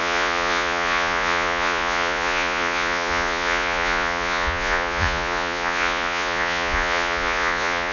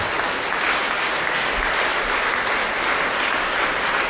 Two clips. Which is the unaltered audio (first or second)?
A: second